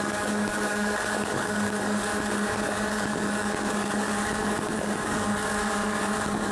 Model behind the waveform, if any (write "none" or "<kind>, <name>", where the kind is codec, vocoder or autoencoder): codec, DAC